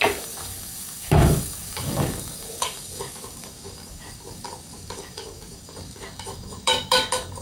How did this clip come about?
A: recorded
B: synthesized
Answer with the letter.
B